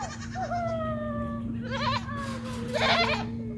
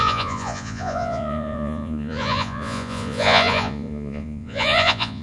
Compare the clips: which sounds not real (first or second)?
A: second